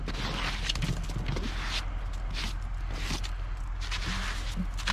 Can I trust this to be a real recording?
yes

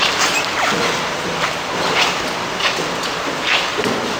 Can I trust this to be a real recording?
yes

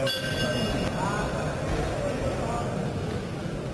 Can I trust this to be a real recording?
yes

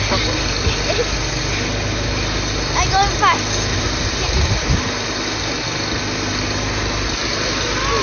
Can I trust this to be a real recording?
yes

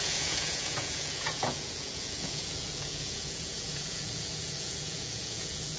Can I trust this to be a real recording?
no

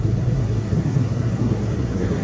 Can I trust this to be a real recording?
no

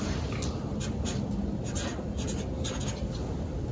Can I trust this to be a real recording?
yes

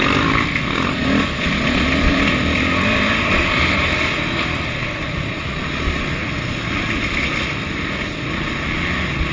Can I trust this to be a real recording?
yes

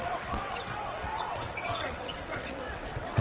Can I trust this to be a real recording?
no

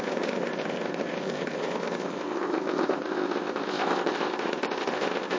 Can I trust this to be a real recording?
no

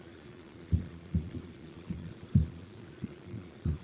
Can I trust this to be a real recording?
no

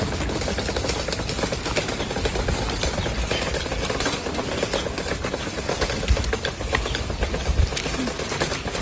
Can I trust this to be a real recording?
yes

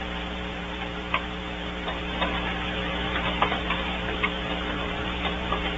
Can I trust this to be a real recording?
no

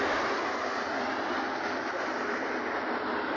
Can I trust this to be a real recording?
yes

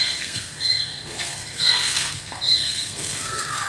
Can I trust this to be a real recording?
no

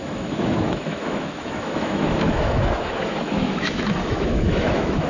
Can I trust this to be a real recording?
no